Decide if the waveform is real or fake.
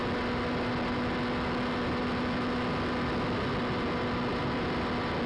real